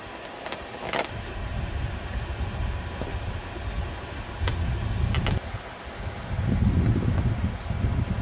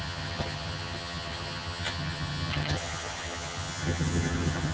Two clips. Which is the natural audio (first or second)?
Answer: first